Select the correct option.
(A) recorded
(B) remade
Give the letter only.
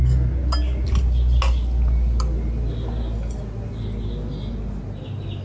A